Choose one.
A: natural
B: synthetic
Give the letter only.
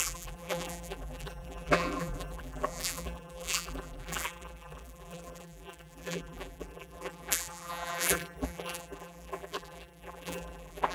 B